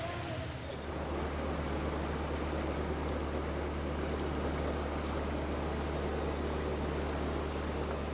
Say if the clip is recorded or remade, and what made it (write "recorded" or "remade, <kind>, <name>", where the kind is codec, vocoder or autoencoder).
recorded